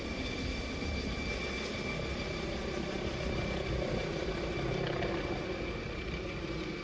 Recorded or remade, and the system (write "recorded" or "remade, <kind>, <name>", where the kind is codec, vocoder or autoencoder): recorded